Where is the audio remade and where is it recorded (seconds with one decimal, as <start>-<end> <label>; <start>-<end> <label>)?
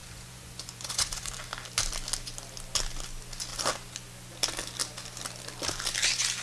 0.0-1.3 remade; 1.3-6.4 recorded